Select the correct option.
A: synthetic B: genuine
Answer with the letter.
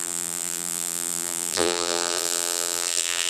A